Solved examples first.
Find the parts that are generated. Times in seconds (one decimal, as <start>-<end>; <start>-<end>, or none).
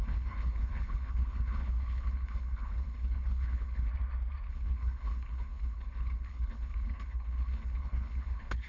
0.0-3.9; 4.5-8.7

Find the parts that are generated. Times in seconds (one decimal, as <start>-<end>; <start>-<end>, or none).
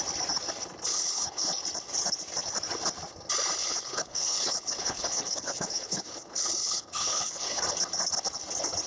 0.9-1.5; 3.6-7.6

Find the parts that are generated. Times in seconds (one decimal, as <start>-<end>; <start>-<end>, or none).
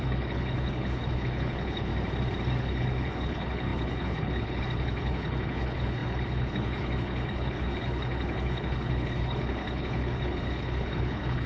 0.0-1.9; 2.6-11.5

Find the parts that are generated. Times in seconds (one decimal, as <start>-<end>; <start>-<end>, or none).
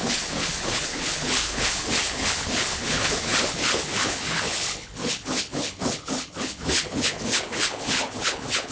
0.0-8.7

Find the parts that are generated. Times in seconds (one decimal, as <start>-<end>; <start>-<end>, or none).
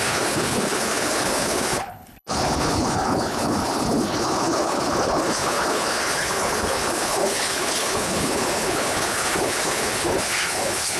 0.0-11.0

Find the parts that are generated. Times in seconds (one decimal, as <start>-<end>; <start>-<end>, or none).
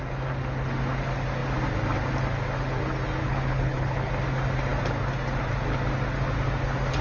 3.2-4.1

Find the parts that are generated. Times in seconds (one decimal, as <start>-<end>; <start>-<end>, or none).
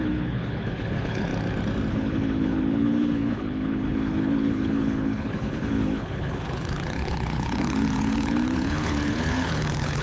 0.0-1.3; 1.9-10.0